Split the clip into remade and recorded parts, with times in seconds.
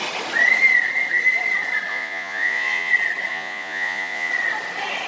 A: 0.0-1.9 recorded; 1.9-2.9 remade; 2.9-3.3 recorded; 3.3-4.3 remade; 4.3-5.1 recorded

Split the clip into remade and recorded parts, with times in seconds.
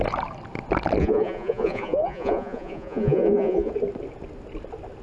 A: 0.0-1.0 recorded; 1.0-3.7 remade; 3.7-5.0 recorded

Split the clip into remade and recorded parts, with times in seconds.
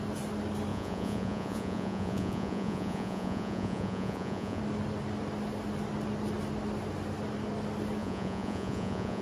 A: 0.0-0.7 recorded; 0.7-4.6 remade; 4.6-8.0 recorded; 8.0-9.2 remade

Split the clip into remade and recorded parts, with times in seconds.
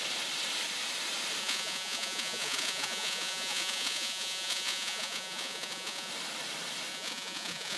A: 0.0-1.4 recorded; 1.4-6.1 remade; 6.1-6.9 recorded; 6.9-7.8 remade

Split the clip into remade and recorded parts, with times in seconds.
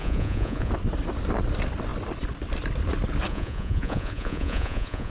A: 0.0-0.7 remade; 0.7-3.3 recorded; 3.3-5.1 remade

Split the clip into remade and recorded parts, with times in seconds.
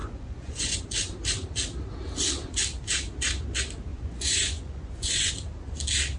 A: 0.0-0.8 remade; 0.8-3.9 recorded; 3.9-5.3 remade; 5.3-6.2 recorded